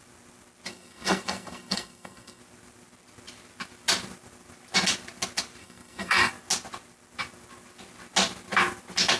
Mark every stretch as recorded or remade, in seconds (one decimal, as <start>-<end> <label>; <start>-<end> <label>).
0.0-0.7 recorded; 0.7-2.4 remade; 2.4-5.6 recorded; 5.6-6.3 remade; 6.3-9.2 recorded